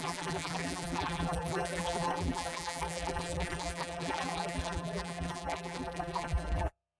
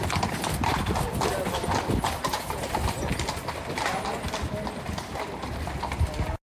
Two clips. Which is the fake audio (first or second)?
first